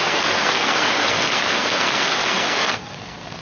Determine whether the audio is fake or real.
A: fake